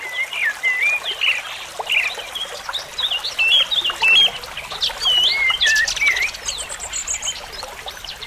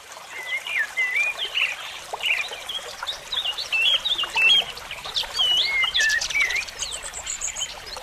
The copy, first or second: second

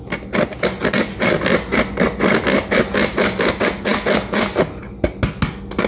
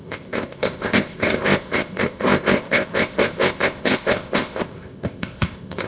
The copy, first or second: second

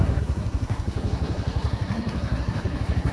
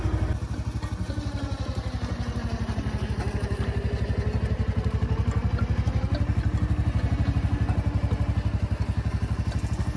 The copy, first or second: first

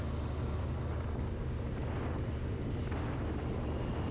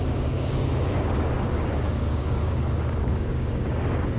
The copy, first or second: second